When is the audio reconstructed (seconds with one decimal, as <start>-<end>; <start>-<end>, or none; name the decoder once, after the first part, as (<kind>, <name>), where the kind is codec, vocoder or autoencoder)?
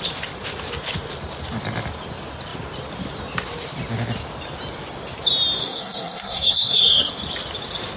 5.6-7.1 (codec, SNAC)